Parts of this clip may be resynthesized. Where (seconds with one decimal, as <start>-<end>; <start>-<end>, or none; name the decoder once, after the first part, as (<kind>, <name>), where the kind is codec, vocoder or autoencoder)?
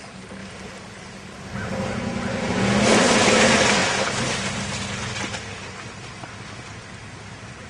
none